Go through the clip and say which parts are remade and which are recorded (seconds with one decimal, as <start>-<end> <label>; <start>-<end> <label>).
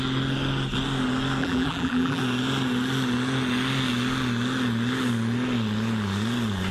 0.0-1.4 recorded; 1.4-2.2 remade; 2.2-6.7 recorded